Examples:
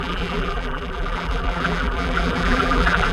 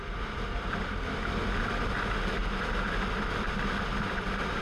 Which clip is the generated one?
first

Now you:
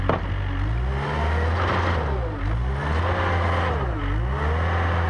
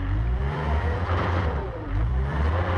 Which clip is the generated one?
second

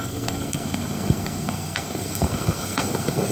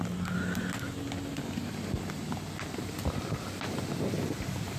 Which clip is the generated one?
first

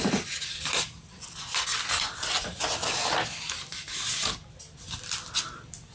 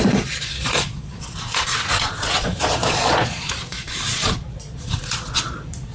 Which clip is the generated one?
second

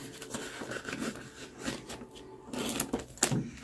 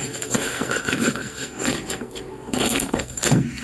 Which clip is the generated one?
second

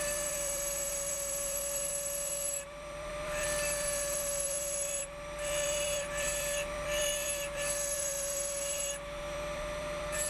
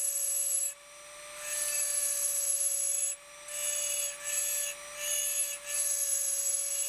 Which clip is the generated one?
first